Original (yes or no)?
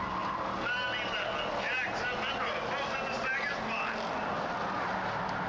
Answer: yes